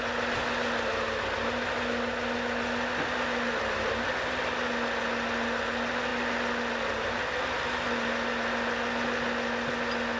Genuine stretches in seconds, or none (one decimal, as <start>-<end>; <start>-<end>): 0.0-10.2